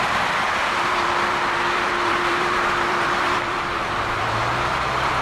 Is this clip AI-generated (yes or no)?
yes